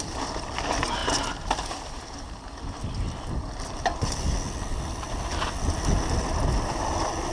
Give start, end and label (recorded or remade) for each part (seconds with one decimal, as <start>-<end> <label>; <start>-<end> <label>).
0.0-7.3 recorded